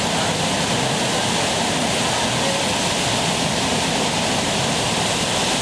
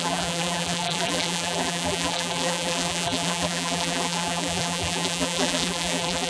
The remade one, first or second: second